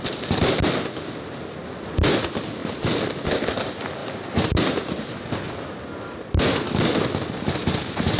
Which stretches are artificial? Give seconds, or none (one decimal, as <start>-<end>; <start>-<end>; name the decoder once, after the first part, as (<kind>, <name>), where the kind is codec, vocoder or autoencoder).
2.6-3.3 (vocoder, BigVGAN v2)